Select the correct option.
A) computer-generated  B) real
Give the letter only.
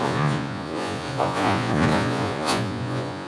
A